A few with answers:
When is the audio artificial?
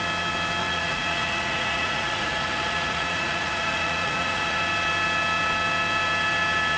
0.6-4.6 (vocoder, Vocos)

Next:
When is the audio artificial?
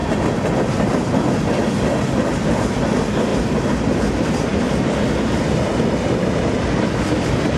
none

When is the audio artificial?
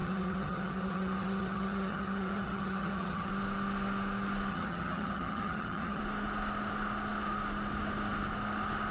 0.0-3.3 (vocoder, HiFi-GAN); 4.5-6.0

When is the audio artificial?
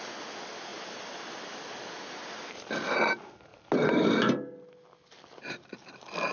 0.7-2.7 (vocoder, BigVGAN v2); 3.5-4.2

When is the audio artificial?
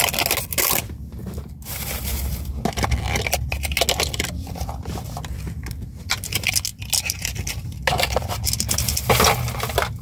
1.2-2.5 (vocoder, BigVGAN v2)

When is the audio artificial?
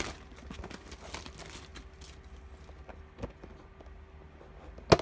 none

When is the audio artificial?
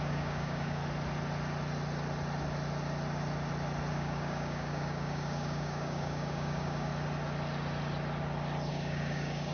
0.0-0.8 (codec, DAC); 3.9-6.9; 8.7-9.5